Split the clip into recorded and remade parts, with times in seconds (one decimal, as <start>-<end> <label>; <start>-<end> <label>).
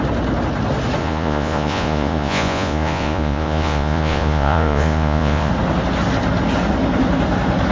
0.0-1.0 recorded; 1.0-5.5 remade; 5.5-7.7 recorded